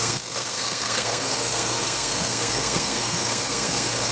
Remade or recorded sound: remade